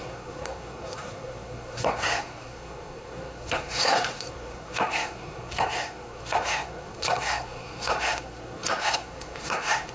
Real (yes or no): no